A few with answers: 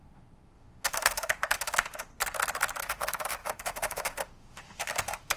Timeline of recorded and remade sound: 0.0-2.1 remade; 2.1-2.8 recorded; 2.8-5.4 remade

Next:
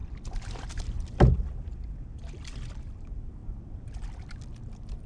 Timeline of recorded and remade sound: 0.0-5.1 recorded